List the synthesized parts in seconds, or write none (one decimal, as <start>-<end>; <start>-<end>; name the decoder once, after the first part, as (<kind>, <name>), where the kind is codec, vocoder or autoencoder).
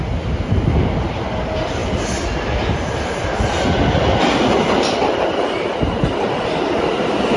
none